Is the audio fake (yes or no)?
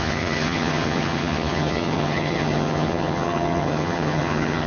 yes